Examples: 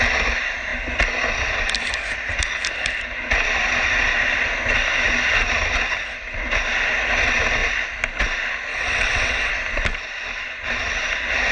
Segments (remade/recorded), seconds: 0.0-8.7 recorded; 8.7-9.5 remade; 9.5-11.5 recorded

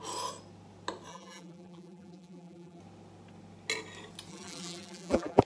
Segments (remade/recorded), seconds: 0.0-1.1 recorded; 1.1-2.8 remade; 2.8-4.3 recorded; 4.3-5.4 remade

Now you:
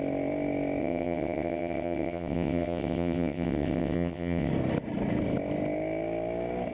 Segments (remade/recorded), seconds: 0.0-0.8 recorded; 0.8-4.5 remade; 4.5-6.7 recorded

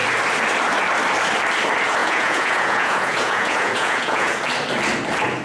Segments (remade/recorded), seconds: 0.0-2.0 recorded; 2.0-4.4 remade; 4.4-5.4 recorded